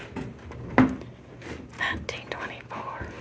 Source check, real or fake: real